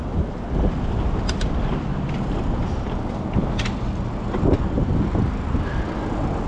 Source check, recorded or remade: recorded